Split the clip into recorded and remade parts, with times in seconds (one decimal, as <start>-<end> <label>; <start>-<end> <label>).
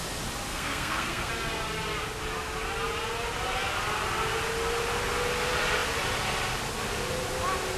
0.0-0.5 recorded; 0.5-1.3 remade; 1.3-7.8 recorded